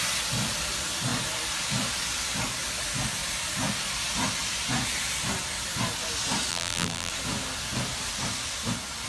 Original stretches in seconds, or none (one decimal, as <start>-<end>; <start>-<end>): 0.0-6.5; 7.1-9.1